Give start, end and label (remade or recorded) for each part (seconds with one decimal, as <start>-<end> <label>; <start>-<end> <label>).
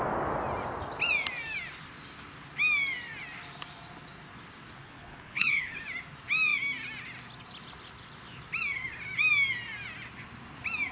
0.0-4.8 recorded; 4.8-5.7 remade; 5.7-10.9 recorded